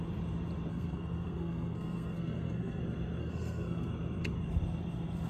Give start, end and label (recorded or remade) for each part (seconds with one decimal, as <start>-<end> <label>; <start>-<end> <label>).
0.0-0.7 recorded; 0.7-2.8 remade; 2.8-3.2 recorded; 3.2-3.9 remade; 3.9-5.3 recorded